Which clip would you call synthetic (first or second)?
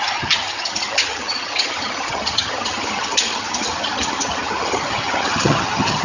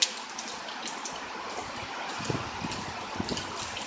first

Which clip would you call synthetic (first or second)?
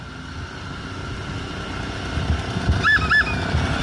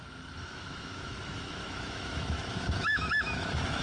second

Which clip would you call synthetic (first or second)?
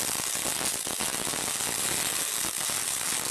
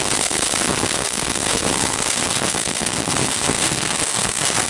second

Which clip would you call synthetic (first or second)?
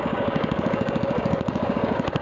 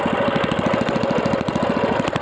first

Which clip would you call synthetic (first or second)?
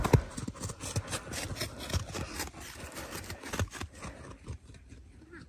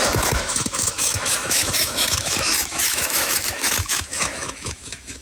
second